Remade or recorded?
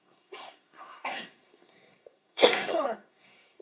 remade